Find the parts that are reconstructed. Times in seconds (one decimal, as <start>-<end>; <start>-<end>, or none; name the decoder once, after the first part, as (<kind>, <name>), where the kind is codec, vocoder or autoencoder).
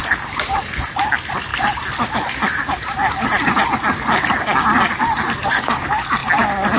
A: none